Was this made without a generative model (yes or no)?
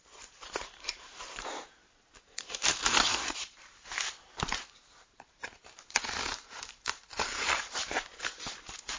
no